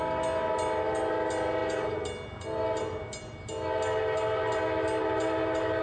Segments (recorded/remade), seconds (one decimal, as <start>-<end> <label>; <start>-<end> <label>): 0.0-5.8 recorded